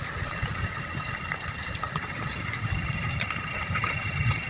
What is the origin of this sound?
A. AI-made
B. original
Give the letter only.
A